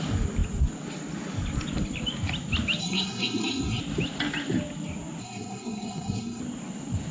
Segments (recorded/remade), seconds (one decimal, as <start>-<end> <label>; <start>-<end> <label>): 0.0-2.8 recorded; 2.8-3.8 remade; 3.8-5.2 recorded; 5.2-6.4 remade; 6.4-7.1 recorded